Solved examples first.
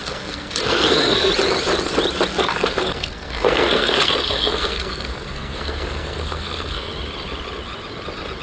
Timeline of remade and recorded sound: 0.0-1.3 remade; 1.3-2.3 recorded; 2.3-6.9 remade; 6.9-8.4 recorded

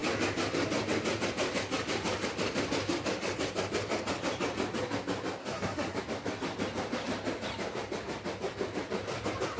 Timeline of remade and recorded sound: 0.0-5.4 recorded; 5.4-6.0 remade; 6.0-9.6 recorded

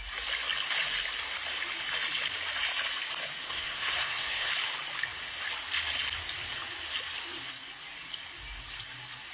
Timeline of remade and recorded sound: 0.0-3.4 recorded; 3.4-4.5 remade; 4.5-9.3 recorded